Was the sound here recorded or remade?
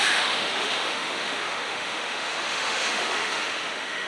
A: remade